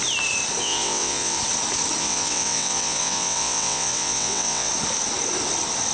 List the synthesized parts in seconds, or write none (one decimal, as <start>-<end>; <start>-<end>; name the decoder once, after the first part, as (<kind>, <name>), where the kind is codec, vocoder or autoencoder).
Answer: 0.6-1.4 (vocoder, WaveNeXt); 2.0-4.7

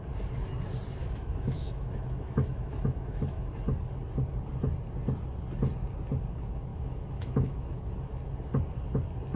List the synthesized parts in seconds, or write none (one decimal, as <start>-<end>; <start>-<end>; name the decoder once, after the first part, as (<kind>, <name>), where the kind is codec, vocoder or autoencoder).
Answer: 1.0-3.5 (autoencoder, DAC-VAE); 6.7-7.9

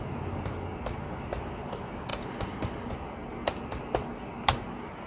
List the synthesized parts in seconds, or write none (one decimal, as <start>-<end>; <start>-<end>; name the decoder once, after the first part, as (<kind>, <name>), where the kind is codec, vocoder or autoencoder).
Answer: none